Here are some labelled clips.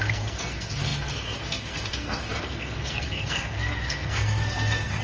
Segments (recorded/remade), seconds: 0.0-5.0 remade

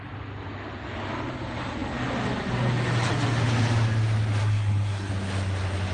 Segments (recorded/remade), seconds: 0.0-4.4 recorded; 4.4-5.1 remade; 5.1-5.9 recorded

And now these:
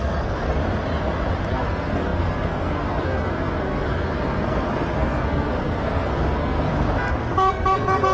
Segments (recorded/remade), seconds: 0.0-0.6 remade; 0.6-1.5 recorded; 1.5-6.7 remade; 6.7-7.2 recorded; 7.2-8.1 remade

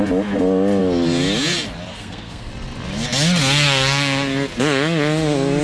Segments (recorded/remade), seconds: 0.0-1.9 recorded; 1.9-2.5 remade; 2.5-5.6 recorded

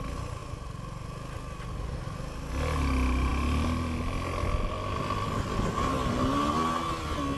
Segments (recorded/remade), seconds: 0.0-7.4 recorded

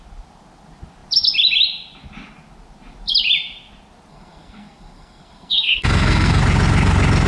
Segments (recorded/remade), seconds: 0.0-4.1 recorded; 4.1-6.4 remade; 6.4-7.3 recorded

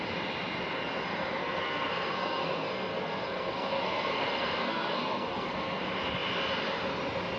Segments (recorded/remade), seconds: 0.0-1.4 recorded; 1.4-5.8 remade; 5.8-7.4 recorded